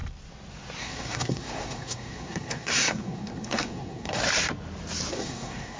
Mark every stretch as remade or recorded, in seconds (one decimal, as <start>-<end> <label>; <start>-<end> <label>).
0.0-0.8 recorded; 0.8-4.2 remade; 4.2-5.1 recorded; 5.1-5.8 remade